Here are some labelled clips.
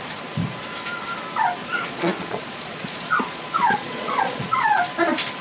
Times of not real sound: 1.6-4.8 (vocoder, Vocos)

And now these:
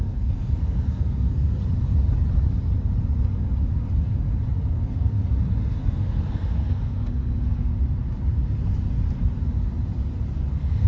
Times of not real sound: 0.0-1.6 (codec, SNAC); 4.7-5.2; 5.7-7.7; 10.5-10.9

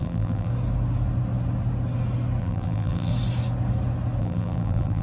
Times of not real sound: 0.0-0.5 (vocoder, BigVGAN v2); 2.4-3.1; 4.2-5.0

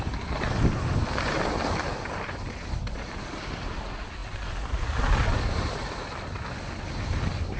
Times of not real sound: none

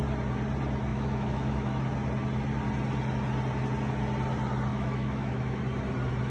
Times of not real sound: 0.9-1.8 (autoencoder, DAC-VAE); 4.7-5.6

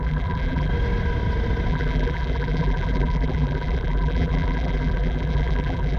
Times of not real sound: 0.0-0.7 (vocoder, BigVGAN v2); 1.7-6.0

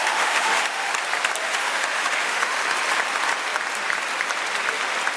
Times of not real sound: 0.0-0.9 (autoencoder, DAC-VAE); 1.4-2.6

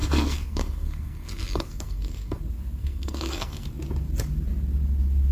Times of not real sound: 0.0-2.4 (codec, SNAC); 2.8-3.7